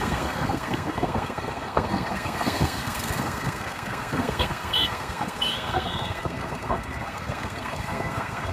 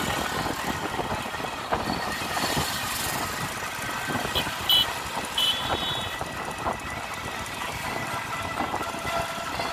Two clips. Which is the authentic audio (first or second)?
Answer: second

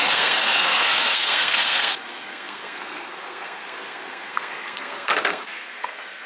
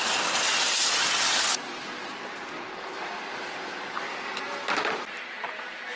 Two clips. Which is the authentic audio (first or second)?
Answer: second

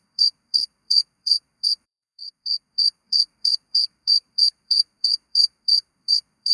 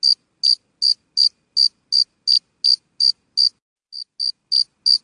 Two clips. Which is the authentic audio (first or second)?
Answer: second